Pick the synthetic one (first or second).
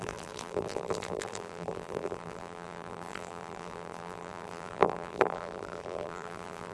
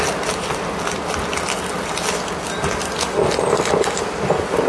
first